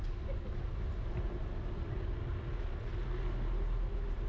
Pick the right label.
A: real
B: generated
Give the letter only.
A